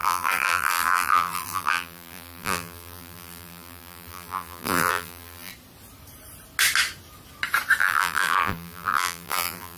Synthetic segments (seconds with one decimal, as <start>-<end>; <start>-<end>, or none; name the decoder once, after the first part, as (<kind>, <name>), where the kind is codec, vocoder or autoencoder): 0.0-5.5 (vocoder, BigVGAN v2); 7.8-9.8